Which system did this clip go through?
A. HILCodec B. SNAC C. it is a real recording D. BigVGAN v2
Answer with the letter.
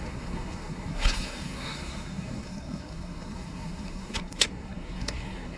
B